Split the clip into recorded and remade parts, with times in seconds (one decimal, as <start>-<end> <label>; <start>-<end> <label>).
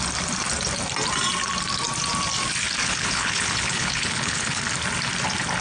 0.0-2.8 recorded; 2.8-4.6 remade; 4.6-5.6 recorded